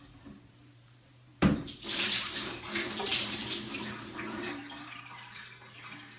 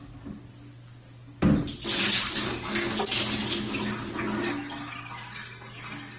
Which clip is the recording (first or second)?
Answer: second